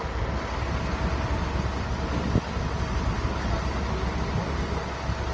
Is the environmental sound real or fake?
real